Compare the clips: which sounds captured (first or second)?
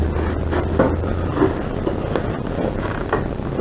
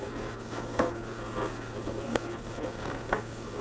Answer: first